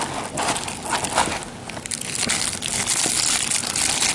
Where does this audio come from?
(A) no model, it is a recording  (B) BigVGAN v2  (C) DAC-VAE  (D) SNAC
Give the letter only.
A